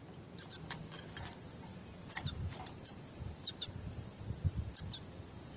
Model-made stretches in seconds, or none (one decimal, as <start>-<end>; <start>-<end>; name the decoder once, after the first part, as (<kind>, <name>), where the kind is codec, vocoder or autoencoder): 1.7-4.8 (vocoder, BigVGAN v2)